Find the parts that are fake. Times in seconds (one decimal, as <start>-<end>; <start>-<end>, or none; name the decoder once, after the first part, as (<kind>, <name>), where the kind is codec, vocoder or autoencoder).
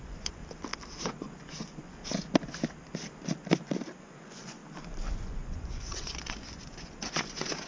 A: 0.0-0.4 (vocoder, Vocos); 1.0-2.0; 4.0-4.6; 5.2-7.7